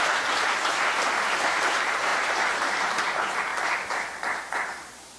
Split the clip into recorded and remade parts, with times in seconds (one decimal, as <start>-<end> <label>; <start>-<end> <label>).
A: 0.0-0.6 remade; 0.6-1.3 recorded; 1.3-3.5 remade; 3.5-4.4 recorded; 4.4-5.2 remade